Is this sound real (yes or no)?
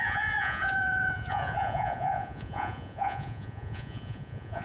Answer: no